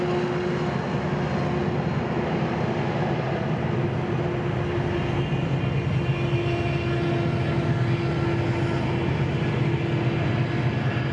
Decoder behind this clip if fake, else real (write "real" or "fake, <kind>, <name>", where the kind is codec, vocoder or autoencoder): real